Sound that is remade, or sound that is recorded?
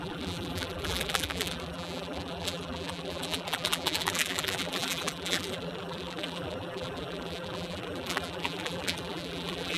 remade